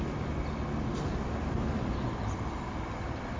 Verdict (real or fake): real